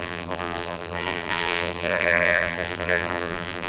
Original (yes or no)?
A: no